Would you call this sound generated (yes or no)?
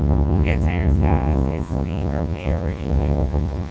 yes